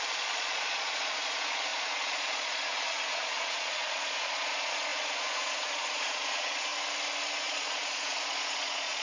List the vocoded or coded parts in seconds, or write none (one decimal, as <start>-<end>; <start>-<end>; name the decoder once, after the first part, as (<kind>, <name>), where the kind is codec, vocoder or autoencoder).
0.0-6.7 (vocoder, Vocos); 7.4-9.0